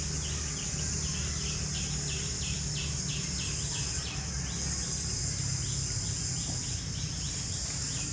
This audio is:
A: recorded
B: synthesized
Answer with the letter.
A